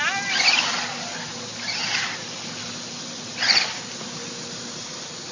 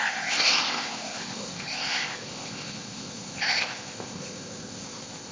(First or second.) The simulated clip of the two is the second